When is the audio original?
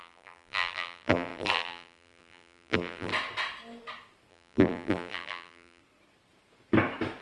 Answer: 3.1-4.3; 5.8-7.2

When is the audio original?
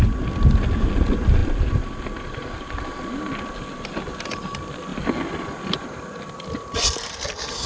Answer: 0.0-7.7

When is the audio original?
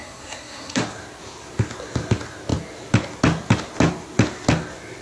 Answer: 0.8-5.0